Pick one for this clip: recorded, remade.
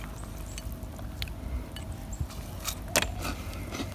recorded